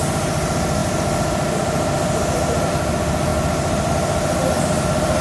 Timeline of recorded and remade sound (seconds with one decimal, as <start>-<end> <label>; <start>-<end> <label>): 0.0-0.8 recorded; 0.8-2.7 remade; 2.7-3.3 recorded; 3.3-3.9 remade; 3.9-5.2 recorded